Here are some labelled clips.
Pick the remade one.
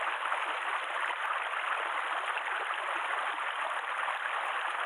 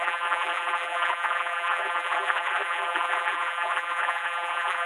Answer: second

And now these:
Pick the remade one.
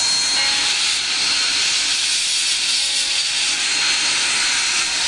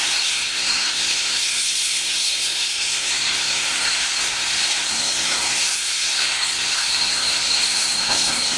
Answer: second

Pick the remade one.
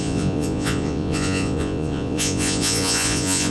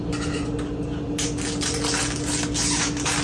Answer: first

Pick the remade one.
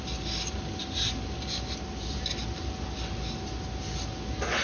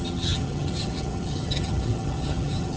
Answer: second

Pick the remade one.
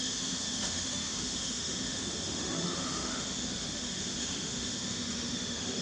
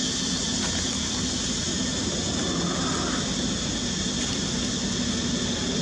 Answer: first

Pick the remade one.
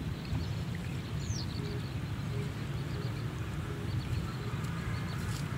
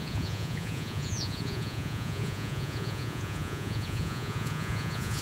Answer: second